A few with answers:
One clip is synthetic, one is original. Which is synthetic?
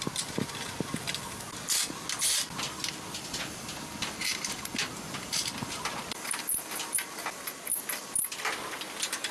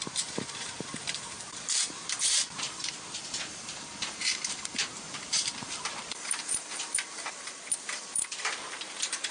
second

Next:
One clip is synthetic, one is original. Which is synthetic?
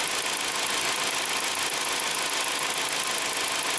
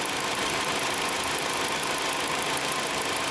second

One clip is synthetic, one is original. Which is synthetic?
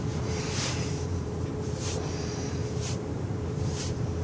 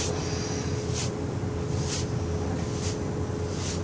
first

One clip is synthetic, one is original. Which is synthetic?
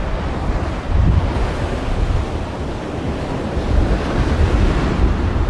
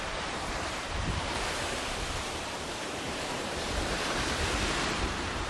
second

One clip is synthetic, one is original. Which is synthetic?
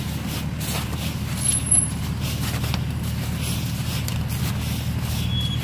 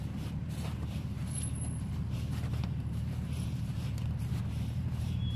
second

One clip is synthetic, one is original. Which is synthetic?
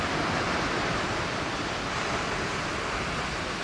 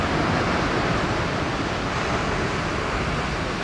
first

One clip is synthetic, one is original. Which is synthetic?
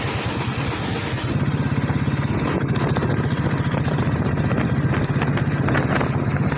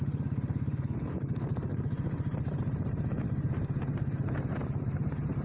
second